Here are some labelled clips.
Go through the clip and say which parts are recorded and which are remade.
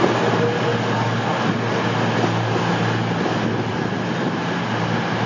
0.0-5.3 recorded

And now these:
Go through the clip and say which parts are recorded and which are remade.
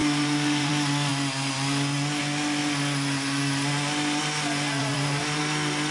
0.0-0.7 remade; 0.7-4.8 recorded; 4.8-5.4 remade; 5.4-5.9 recorded